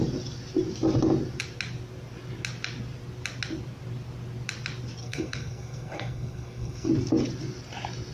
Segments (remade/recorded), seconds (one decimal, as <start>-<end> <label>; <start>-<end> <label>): 0.0-5.0 recorded; 5.0-6.9 remade; 6.9-8.1 recorded